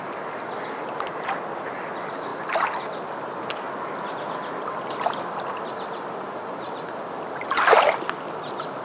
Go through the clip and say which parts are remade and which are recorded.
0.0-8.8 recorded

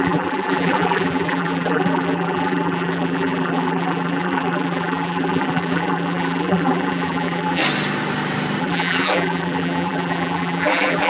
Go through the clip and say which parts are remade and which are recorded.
0.0-7.6 remade; 7.6-8.6 recorded; 8.6-11.1 remade

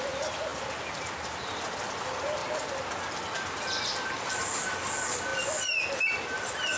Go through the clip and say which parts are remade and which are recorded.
0.0-6.8 recorded